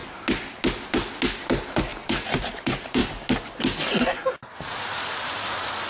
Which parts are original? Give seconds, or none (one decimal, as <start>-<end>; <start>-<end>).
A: 0.0-1.4; 3.0-4.0